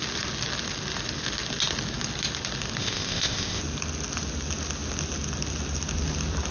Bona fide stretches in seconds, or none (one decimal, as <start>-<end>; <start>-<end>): 0.0-2.8; 3.6-6.5